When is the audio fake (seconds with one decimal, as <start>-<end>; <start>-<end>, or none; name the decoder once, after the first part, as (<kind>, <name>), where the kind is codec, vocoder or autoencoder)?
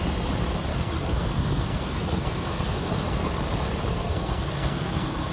0.7-3.3 (codec, SNAC); 3.9-5.3